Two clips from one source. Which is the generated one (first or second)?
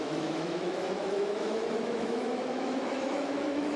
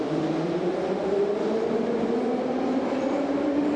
first